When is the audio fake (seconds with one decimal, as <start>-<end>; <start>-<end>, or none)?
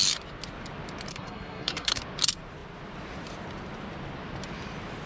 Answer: 1.1-2.0